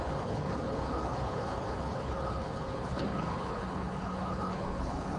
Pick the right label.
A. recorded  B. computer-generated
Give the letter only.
B